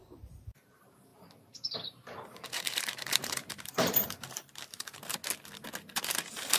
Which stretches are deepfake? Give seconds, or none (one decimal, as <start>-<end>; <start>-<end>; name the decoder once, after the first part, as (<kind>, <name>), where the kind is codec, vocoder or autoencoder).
0.0-5.2 (vocoder, BigVGAN v2); 5.9-6.6